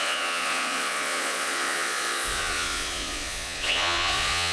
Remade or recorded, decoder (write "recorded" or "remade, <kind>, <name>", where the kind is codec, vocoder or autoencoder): remade, vocoder, Vocos